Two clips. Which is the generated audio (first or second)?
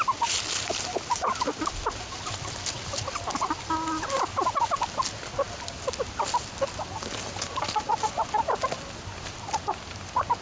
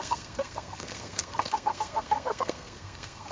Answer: second